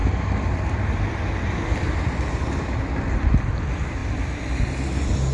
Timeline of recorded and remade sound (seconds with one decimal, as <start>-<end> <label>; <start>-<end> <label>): 0.0-3.2 remade; 3.2-4.0 recorded; 4.0-4.7 remade; 4.7-5.3 recorded